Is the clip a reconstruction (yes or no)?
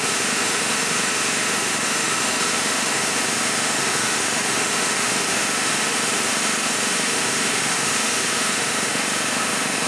yes